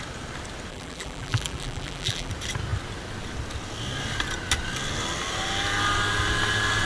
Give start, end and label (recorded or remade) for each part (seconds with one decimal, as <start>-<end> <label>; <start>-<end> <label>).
0.0-0.7 recorded; 0.7-2.3 remade; 2.3-6.9 recorded